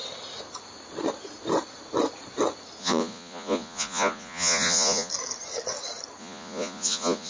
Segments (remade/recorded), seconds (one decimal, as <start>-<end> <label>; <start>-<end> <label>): 0.0-2.8 recorded; 2.8-5.1 remade; 5.1-6.2 recorded; 6.2-7.3 remade

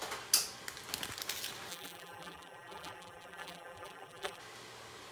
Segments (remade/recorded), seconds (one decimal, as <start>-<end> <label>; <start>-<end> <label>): 0.0-1.7 recorded; 1.7-4.4 remade; 4.4-5.1 recorded